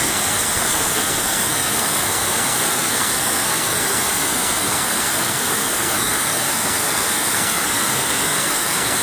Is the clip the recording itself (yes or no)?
no